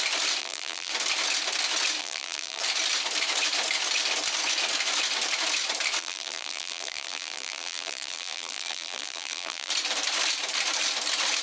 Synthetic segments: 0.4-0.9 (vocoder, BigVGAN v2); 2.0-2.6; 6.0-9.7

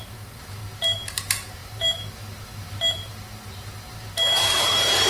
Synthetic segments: 0.0-0.6 (vocoder, BigVGAN v2); 1.2-5.1

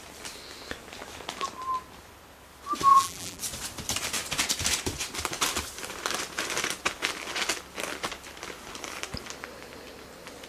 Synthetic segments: 2.9-3.4 (vocoder, BigVGAN v2)

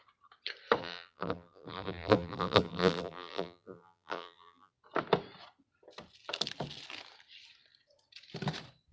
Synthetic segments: 0.8-4.7 (vocoder, BigVGAN v2)

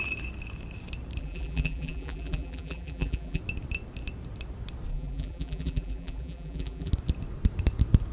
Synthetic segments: 1.2-3.4 (vocoder, BigVGAN v2); 4.9-6.9

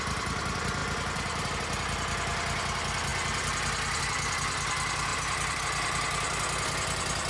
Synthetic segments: 0.8-1.5 (vocoder, BigVGAN v2)